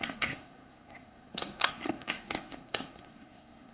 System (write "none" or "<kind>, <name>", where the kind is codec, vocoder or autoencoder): codec, SNAC